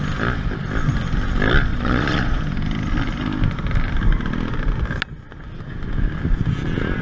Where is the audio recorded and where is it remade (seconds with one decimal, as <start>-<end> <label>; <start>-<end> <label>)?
0.0-1.7 recorded; 1.7-2.4 remade; 2.4-7.0 recorded